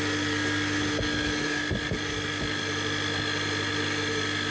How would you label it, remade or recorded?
recorded